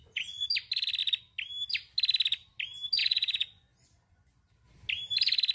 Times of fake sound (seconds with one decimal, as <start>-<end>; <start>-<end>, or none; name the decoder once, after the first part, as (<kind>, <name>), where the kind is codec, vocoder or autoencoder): 0.0-0.5 (vocoder, Vocos); 3.0-4.5